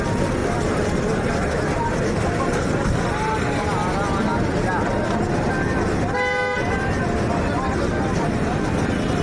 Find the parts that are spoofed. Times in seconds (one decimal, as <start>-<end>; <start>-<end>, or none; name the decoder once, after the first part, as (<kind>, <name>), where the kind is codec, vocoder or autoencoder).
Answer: none